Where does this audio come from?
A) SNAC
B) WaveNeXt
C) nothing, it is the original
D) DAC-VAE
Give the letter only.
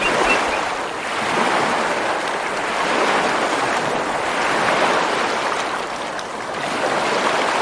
C